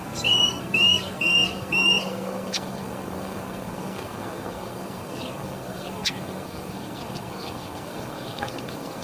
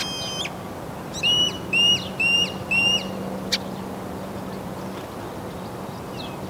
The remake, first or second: first